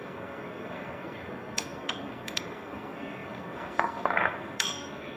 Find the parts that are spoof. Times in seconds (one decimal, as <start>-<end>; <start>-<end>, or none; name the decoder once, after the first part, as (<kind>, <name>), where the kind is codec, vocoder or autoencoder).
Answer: 0.0-5.2 (codec, SNAC)